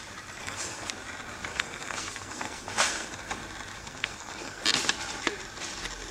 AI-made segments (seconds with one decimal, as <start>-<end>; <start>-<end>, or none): 0.4-0.9; 1.5-3.3; 3.8-4.6